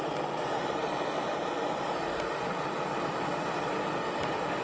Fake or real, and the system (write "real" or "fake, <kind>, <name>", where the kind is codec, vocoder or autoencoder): real